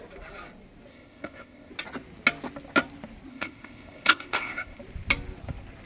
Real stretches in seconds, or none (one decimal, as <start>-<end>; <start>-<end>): 0.0-0.9; 1.7-3.3; 4.8-5.9